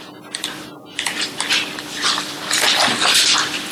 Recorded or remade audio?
remade